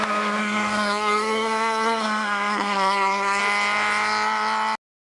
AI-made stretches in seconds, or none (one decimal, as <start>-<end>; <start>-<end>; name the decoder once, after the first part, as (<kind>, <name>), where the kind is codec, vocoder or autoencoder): 0.4-3.4 (codec, SNAC)